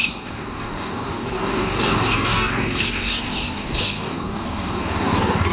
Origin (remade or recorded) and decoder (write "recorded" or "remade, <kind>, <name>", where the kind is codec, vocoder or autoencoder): remade, codec, DAC